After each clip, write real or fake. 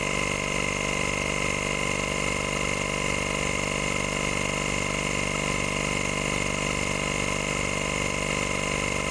real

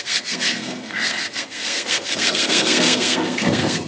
fake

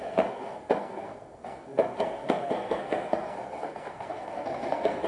fake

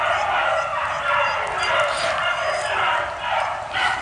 real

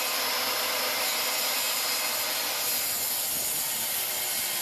real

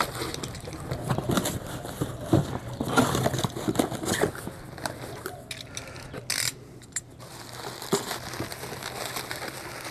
real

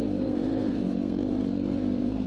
fake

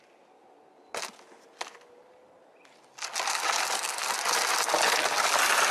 real